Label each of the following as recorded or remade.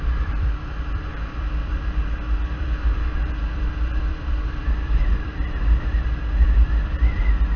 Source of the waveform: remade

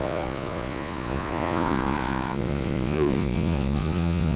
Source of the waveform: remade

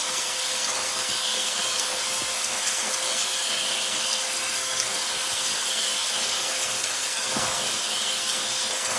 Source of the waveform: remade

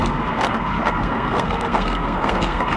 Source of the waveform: remade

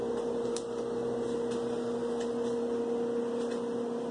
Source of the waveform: recorded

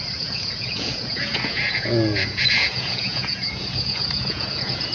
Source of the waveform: remade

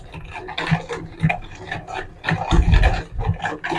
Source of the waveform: recorded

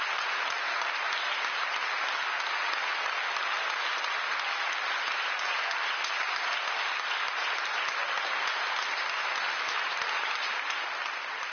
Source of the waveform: recorded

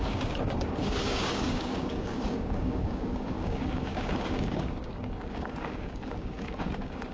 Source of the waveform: remade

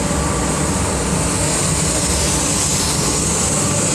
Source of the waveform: recorded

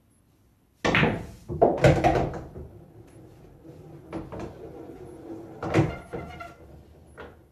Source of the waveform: recorded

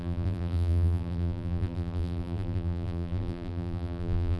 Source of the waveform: remade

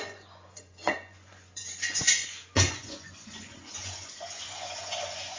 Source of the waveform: remade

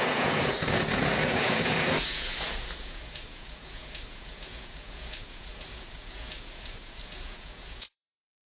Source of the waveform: remade